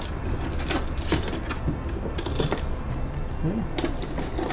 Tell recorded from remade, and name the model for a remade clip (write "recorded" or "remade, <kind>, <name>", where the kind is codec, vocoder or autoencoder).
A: recorded